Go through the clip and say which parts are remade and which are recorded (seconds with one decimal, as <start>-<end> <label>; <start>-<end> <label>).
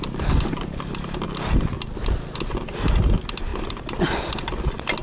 0.0-5.0 recorded